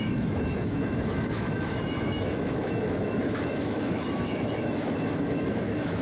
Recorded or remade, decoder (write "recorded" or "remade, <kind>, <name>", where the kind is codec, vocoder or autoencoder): remade, autoencoder, DAC-VAE